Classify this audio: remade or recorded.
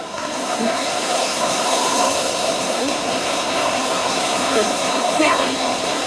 remade